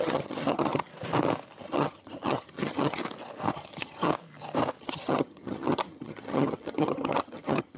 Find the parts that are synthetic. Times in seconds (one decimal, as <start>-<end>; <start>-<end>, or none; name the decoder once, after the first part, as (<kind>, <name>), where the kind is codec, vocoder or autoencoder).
0.0-0.9 (vocoder, HiFi-GAN); 1.6-3.0; 3.5-4.1; 4.8-7.8